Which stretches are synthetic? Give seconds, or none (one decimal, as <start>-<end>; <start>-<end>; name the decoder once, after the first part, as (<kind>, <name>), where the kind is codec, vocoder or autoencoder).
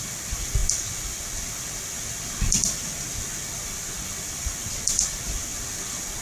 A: none